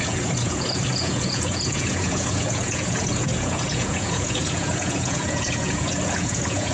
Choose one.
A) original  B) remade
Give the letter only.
B